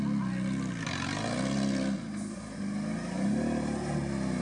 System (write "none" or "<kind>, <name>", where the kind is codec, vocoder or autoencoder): none